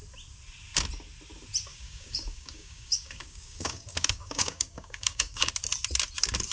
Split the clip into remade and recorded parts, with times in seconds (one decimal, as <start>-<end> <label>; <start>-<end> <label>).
0.0-1.7 recorded; 1.7-5.5 remade; 5.5-6.5 recorded